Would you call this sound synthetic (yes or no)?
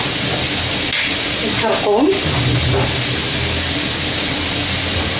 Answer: no